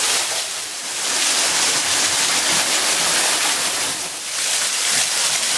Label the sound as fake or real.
fake